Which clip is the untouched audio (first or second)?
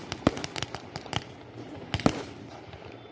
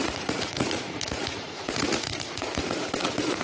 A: first